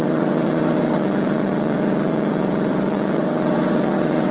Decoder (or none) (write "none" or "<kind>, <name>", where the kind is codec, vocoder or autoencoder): vocoder, WaveNeXt